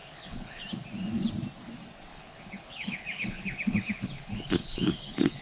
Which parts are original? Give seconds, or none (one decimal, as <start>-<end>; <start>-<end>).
0.6-2.1